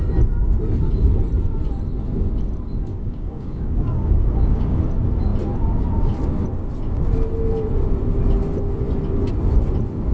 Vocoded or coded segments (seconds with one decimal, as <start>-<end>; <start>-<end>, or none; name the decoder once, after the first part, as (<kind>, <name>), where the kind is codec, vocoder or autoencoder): 2.9-4.8 (codec, DAC)